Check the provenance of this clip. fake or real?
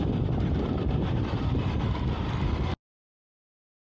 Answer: real